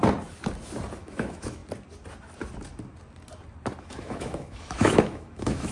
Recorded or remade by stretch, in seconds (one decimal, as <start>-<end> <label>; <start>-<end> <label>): 0.0-1.0 recorded; 1.0-1.6 remade; 1.6-3.8 recorded; 3.8-5.7 remade

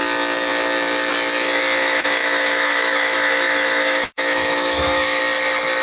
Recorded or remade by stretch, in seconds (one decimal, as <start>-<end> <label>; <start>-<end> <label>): 0.0-1.8 recorded; 1.8-5.2 remade; 5.2-5.8 recorded

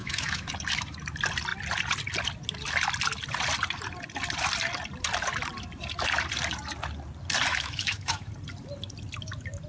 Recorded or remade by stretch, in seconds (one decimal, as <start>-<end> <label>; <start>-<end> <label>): 0.0-0.5 remade; 0.5-7.5 recorded; 7.5-8.3 remade; 8.3-9.7 recorded

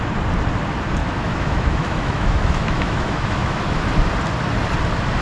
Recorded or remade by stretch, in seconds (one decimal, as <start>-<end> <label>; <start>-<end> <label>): 0.0-1.0 recorded; 1.0-3.9 remade; 3.9-5.2 recorded

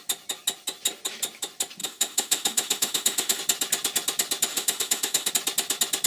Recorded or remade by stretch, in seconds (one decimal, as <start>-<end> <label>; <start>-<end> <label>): 0.0-1.8 recorded; 1.8-3.4 remade; 3.4-4.5 recorded; 4.5-5.3 remade; 5.3-6.1 recorded

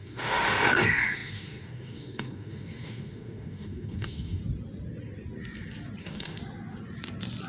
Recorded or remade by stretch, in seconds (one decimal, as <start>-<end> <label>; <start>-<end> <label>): 0.0-4.4 remade; 4.4-6.0 recorded; 6.0-6.4 remade; 6.4-7.5 recorded